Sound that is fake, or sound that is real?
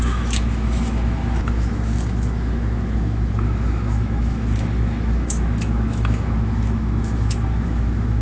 fake